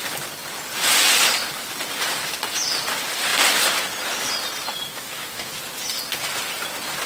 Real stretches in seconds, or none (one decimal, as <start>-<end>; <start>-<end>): 0.0-4.9; 5.5-7.1